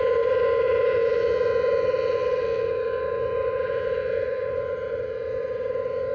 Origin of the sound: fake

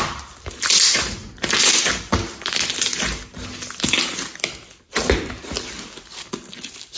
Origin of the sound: real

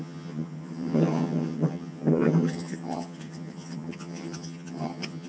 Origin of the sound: fake